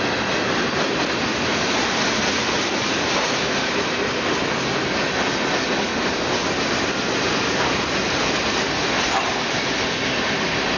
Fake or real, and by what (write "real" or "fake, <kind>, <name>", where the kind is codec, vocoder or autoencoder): real